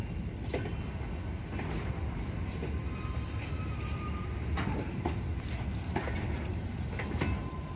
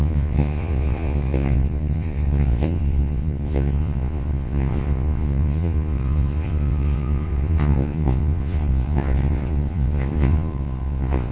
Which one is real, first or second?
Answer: first